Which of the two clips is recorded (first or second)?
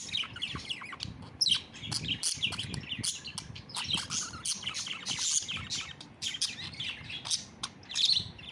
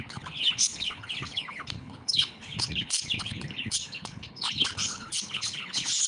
first